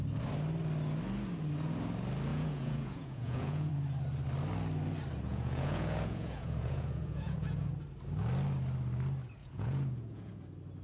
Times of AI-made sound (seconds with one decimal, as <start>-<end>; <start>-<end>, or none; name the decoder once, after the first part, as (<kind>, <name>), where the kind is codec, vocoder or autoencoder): 2.3-3.7 (vocoder, Vocos); 5.3-7.7; 9.4-10.4